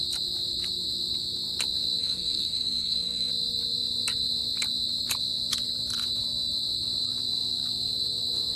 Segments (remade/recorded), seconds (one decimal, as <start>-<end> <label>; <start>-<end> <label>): 0.0-2.0 recorded; 2.0-3.3 remade; 3.3-8.6 recorded